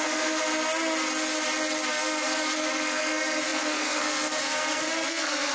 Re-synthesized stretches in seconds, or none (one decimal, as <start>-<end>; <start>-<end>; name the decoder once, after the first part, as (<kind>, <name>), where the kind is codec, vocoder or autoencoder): 0.0-0.5 (codec, SNAC); 1.9-5.5